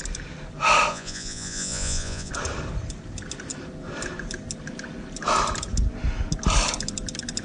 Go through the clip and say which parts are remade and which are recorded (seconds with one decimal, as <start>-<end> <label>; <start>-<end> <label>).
0.0-0.9 recorded; 0.9-2.3 remade; 2.3-7.4 recorded